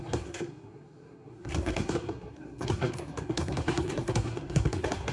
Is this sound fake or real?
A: fake